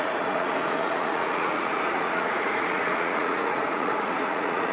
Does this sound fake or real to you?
fake